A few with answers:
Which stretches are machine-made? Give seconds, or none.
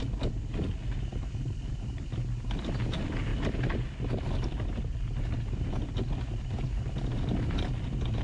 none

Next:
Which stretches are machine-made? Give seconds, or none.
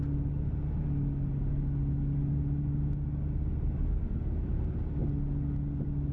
none